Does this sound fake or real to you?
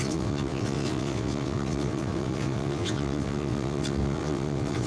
fake